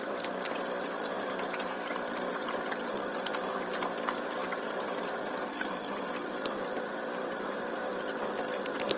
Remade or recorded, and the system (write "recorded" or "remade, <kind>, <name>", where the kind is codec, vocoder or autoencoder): recorded